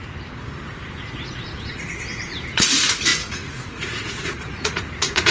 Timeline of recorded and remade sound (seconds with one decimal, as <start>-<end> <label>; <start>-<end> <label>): 0.0-0.7 recorded; 0.7-5.3 remade